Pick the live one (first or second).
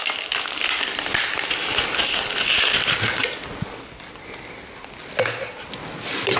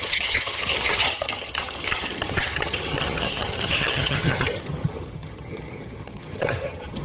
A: first